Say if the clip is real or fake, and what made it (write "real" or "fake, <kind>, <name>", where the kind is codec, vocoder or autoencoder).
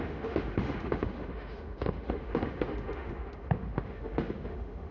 fake, autoencoder, DAC-VAE